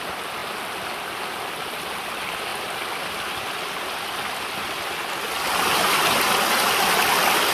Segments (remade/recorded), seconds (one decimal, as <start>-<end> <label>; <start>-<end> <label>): 0.0-7.5 recorded